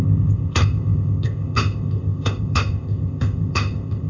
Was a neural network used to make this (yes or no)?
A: yes